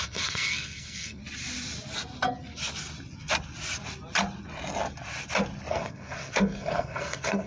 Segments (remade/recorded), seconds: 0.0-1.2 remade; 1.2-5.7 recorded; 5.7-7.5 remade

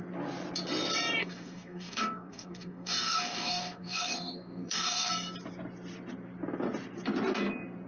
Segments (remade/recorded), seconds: 0.0-1.2 recorded; 1.2-5.1 remade; 5.1-7.9 recorded

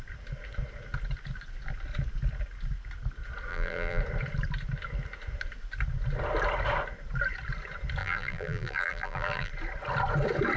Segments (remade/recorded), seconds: 0.0-3.5 recorded; 3.5-4.0 remade; 4.0-8.0 recorded; 8.0-9.5 remade; 9.5-10.6 recorded

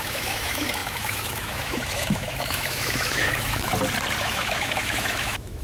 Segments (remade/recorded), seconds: 0.0-3.7 remade; 3.7-4.2 recorded; 4.2-5.6 remade

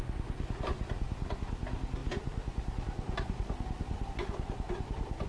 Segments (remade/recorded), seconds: 0.0-2.0 recorded; 2.0-4.1 remade; 4.1-5.3 recorded